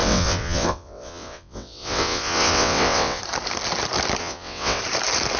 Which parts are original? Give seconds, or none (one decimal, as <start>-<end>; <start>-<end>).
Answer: 3.2-4.2; 4.8-5.4